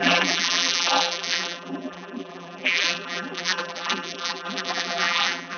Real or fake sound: fake